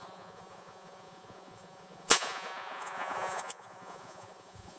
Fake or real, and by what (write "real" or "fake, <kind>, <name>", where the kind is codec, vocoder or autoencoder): fake, vocoder, Vocos